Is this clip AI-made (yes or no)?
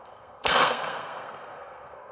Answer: yes